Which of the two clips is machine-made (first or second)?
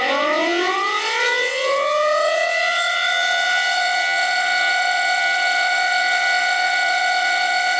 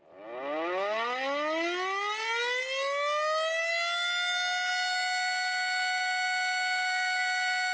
first